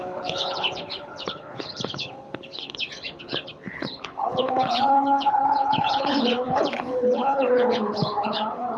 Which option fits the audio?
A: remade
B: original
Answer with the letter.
A